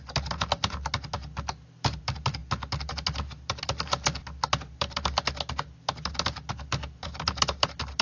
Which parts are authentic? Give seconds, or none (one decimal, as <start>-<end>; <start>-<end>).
0.0-8.0